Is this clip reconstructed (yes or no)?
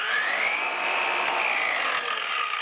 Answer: no